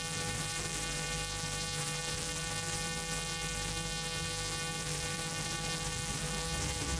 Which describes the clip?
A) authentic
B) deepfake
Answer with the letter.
B